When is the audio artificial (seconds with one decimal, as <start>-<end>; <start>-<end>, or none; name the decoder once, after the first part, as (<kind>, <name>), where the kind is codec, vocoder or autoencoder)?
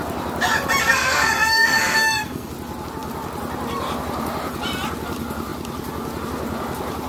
0.8-2.5 (codec, SNAC)